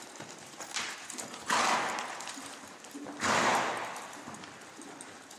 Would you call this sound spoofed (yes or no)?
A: no